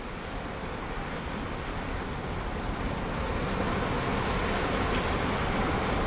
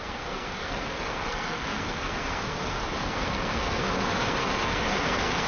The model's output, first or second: second